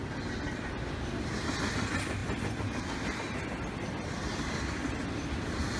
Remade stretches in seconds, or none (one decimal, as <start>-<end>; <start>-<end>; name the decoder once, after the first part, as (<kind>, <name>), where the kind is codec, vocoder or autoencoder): none